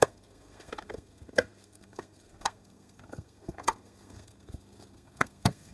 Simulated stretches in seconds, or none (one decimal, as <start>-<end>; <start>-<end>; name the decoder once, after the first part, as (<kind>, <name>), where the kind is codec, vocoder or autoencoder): 0.0-5.7 (codec, SNAC)